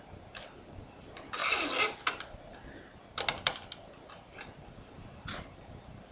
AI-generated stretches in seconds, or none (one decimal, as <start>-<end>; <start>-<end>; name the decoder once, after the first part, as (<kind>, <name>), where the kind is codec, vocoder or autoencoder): 0.0-1.4 (vocoder, BigVGAN v2); 4.1-6.1